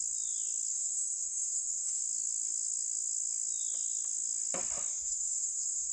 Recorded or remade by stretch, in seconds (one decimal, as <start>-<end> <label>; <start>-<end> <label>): 0.0-0.7 recorded; 0.7-2.0 remade; 2.0-4.9 recorded; 4.9-5.9 remade